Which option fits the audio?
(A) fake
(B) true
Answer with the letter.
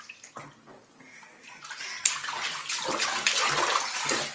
B